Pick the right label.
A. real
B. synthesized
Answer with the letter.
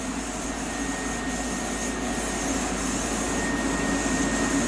A